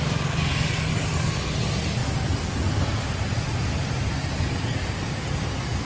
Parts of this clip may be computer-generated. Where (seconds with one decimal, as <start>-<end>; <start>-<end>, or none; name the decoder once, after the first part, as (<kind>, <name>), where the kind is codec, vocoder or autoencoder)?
none